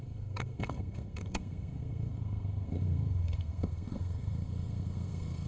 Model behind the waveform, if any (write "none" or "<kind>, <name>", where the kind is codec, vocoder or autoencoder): codec, SNAC